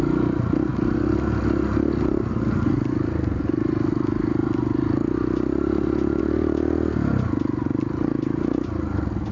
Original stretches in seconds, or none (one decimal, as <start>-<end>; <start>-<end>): 0.0-9.3